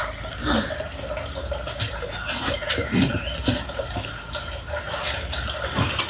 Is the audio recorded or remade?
recorded